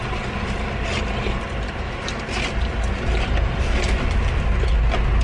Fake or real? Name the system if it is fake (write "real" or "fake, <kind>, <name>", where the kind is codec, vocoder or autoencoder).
real